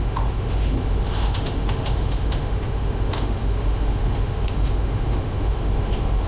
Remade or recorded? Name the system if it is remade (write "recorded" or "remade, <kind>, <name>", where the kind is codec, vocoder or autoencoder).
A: remade, autoencoder, DAC-VAE